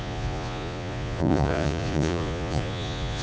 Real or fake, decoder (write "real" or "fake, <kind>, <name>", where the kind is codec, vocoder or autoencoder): fake, vocoder, Vocos